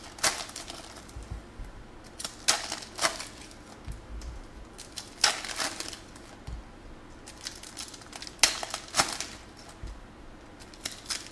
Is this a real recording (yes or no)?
yes